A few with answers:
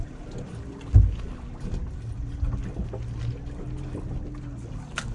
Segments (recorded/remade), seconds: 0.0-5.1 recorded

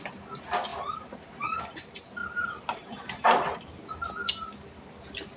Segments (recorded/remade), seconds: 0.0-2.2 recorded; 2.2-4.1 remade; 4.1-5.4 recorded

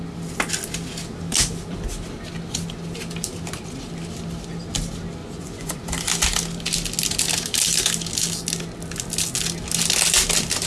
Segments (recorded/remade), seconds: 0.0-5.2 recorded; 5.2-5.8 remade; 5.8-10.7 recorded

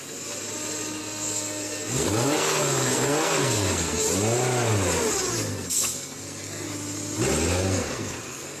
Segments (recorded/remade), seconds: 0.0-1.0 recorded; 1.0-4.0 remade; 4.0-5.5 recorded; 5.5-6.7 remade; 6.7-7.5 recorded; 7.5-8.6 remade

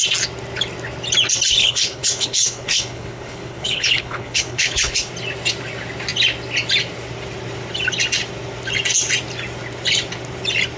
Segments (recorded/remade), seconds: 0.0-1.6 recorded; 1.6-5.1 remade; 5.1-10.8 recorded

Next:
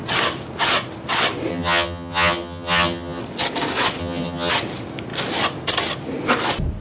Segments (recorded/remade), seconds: 0.0-1.5 recorded; 1.5-3.2 remade; 3.2-4.0 recorded; 4.0-4.5 remade; 4.5-6.8 recorded